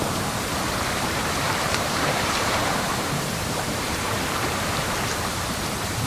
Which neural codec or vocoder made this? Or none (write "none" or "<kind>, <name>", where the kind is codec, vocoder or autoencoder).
vocoder, BigVGAN v2